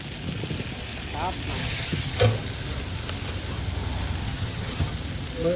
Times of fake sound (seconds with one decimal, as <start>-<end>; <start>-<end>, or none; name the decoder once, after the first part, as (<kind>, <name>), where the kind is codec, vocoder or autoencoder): 1.6-2.2 (vocoder, HiFi-GAN); 4.2-4.9